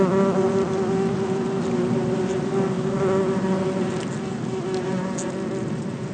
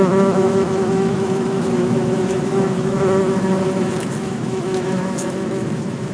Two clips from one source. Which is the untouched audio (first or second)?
first